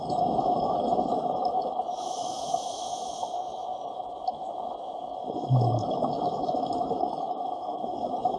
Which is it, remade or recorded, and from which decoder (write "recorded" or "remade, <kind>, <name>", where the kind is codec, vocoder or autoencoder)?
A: remade, autoencoder, DAC-VAE